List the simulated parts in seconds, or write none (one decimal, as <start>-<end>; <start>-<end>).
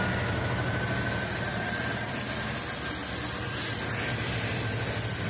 1.5-2.1